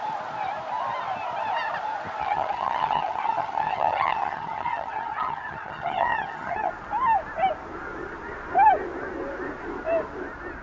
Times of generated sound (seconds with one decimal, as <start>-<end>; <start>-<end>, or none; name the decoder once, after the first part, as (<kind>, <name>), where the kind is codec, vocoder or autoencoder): 2.2-6.7 (vocoder, HiFi-GAN)